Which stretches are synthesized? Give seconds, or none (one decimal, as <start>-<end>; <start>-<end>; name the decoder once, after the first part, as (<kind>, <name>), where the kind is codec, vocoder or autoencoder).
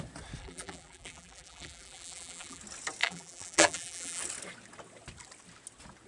0.4-2.6 (vocoder, BigVGAN v2); 3.0-4.2